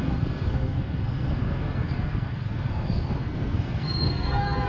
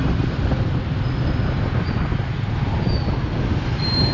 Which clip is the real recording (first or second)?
second